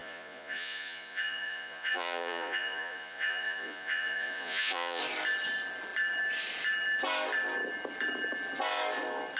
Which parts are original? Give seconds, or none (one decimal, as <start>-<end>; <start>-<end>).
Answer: 5.0-9.4